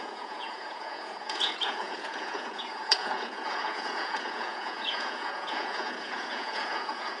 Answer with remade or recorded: remade